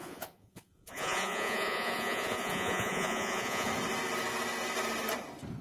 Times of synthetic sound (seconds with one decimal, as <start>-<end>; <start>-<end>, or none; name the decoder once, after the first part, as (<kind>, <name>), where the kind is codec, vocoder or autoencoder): 0.0-3.7 (vocoder, Vocos)